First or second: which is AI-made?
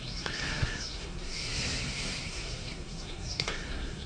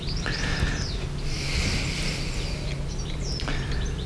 first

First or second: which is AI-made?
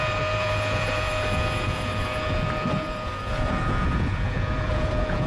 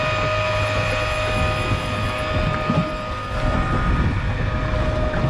first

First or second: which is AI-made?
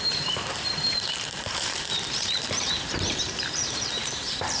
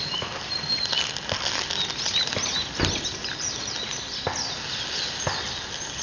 first